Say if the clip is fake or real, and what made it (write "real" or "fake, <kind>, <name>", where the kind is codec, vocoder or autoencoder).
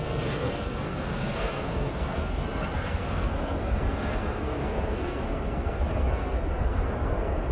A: fake, codec, SNAC